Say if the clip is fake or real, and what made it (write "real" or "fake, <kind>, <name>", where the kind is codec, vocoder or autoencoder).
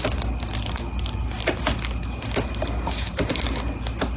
real